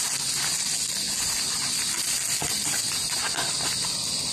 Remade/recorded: recorded